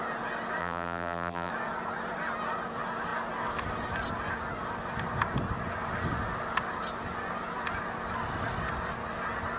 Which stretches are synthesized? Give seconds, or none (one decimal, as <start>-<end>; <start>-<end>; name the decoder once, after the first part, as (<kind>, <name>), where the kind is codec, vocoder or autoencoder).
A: 0.6-1.5 (vocoder, BigVGAN v2)